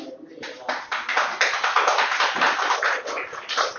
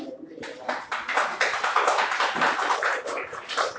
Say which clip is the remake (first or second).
second